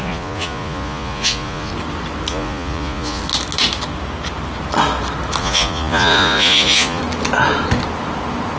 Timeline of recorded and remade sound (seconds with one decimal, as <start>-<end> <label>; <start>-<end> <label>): 0.0-1.7 remade; 1.7-2.3 recorded; 2.3-3.2 remade; 3.2-5.4 recorded; 5.4-7.0 remade; 7.0-8.6 recorded